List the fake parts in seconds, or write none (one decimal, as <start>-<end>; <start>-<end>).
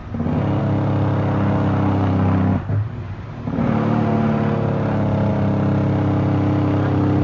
none